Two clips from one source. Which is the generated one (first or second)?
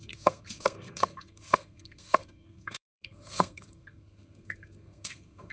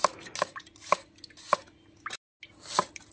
first